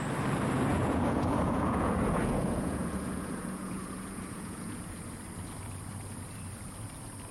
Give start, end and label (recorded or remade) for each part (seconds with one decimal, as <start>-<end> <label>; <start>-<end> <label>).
0.0-0.7 recorded; 0.7-5.1 remade; 5.1-7.3 recorded